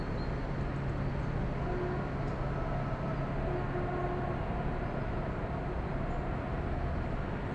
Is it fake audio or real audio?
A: real